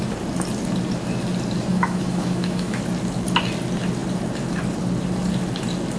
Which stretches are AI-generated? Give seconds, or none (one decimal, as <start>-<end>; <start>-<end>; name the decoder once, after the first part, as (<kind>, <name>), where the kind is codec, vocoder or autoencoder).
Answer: 1.7-2.8 (autoencoder, DAC-VAE)